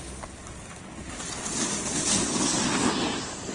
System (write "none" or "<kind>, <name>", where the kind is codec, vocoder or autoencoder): none